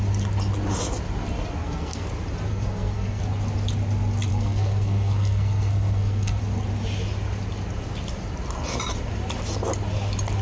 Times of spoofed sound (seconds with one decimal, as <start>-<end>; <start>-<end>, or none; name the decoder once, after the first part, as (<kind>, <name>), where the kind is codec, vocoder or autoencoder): 1.6-2.1 (codec, SNAC); 2.5-3.2; 4.3-6.4